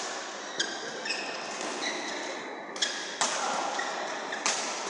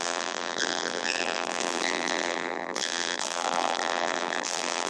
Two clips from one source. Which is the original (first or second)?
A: first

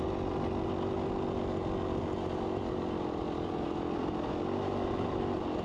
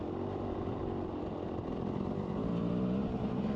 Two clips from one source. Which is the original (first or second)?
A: first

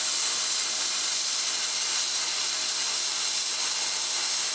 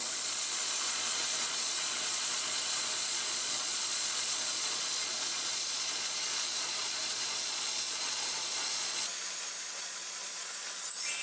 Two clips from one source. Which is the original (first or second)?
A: first